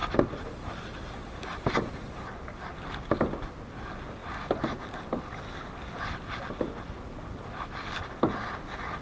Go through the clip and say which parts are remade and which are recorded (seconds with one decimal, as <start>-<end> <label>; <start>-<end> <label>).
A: 0.0-9.0 recorded